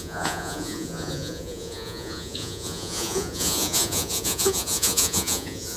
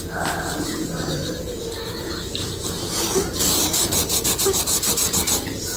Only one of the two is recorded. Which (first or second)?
second